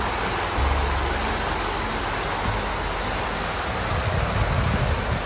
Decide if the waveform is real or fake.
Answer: real